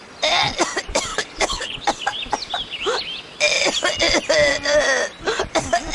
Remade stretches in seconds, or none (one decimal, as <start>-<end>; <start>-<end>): 1.1-1.8